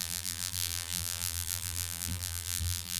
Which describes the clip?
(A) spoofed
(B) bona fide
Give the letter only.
A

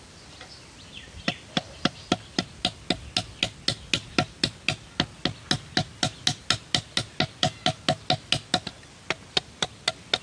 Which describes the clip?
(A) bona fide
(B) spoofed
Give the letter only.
A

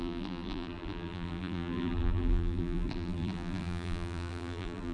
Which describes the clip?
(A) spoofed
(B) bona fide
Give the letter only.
A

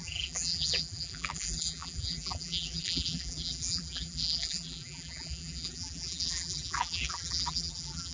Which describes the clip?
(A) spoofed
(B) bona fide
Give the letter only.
A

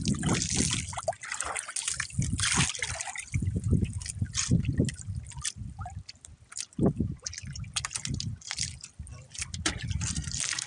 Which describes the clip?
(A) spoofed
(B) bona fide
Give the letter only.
B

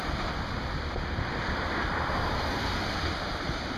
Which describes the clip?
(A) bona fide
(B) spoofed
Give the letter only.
B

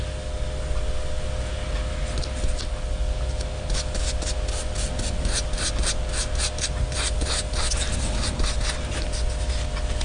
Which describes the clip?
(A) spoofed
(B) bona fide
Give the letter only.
B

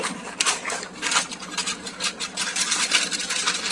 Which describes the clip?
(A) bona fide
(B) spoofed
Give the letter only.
B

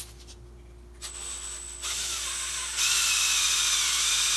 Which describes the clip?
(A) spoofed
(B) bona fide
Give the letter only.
B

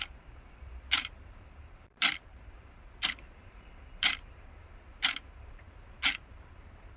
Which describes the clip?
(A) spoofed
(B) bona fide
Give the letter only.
A